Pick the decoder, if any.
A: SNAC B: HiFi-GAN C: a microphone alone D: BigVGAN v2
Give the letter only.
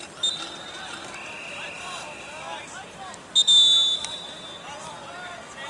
C